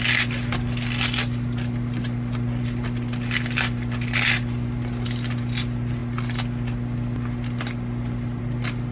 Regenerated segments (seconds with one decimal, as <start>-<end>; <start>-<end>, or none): none